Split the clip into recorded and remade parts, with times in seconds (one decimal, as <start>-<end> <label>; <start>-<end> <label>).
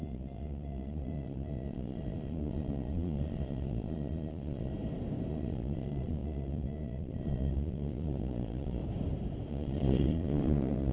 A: 0.0-4.7 remade; 4.7-5.3 recorded; 5.3-8.8 remade; 8.8-9.5 recorded; 9.5-10.9 remade